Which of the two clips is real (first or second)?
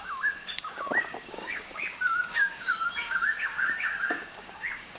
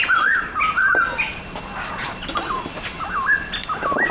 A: second